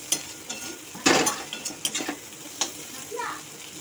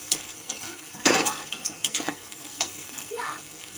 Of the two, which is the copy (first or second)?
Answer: second